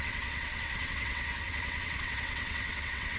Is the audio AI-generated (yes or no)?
yes